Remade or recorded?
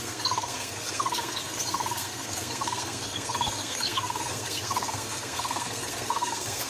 remade